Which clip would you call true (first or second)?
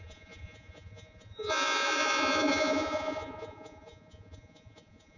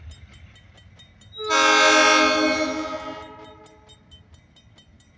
second